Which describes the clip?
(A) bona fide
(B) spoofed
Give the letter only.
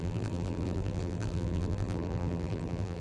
B